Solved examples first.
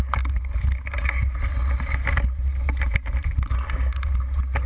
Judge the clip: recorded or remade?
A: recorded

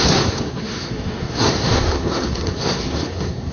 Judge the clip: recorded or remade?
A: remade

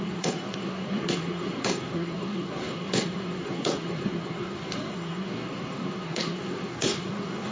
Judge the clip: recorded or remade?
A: remade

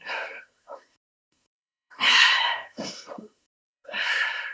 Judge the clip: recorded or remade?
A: remade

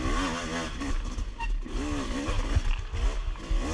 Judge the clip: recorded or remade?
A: recorded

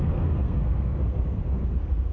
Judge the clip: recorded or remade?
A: remade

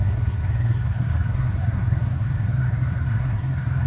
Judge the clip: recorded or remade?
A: remade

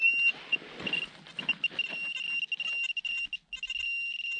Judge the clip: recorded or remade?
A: recorded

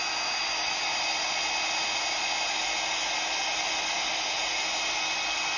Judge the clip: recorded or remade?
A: recorded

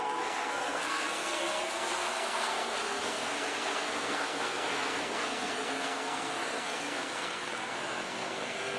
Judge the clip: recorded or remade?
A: remade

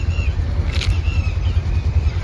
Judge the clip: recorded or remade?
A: recorded